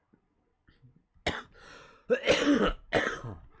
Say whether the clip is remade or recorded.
recorded